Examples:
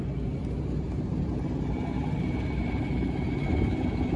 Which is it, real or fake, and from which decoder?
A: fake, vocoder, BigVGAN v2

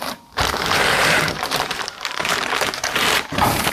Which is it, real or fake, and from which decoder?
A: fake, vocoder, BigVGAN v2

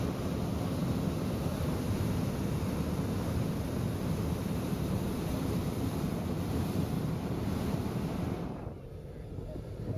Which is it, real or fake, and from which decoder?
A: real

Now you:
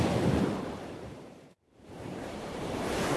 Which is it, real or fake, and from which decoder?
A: fake, vocoder, BigVGAN v2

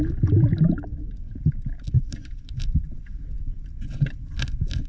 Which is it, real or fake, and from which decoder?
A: real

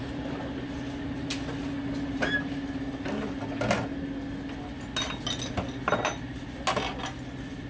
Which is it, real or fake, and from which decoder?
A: real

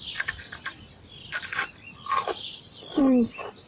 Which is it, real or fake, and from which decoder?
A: fake, vocoder, BigVGAN v2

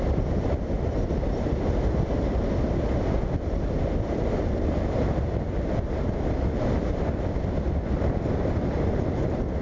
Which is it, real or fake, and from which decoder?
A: real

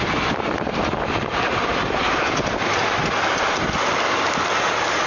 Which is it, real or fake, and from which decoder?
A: fake, vocoder, BigVGAN v2